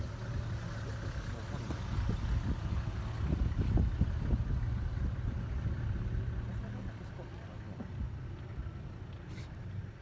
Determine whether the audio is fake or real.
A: real